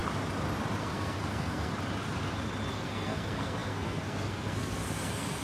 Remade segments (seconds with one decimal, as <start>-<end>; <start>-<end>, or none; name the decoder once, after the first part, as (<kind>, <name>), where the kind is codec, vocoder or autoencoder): 0.8-1.7 (codec, SNAC); 2.7-5.4